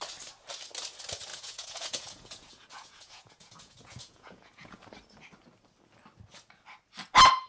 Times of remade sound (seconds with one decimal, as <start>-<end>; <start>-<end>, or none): 1.3-4.8